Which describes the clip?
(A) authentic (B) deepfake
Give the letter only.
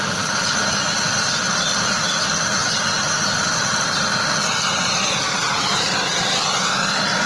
A